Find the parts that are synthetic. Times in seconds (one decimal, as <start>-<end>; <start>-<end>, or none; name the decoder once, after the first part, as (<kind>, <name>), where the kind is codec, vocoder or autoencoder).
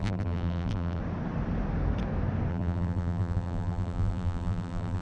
0.0-1.0 (vocoder, BigVGAN v2); 2.5-5.0